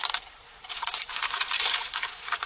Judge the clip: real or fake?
fake